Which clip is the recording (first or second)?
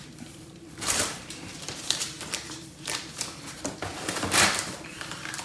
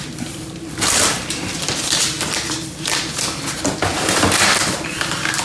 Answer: second